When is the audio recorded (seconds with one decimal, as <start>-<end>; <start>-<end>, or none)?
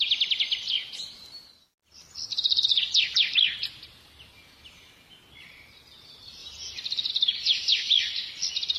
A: 0.0-8.8